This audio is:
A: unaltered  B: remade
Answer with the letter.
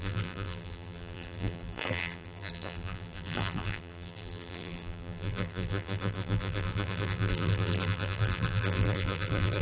B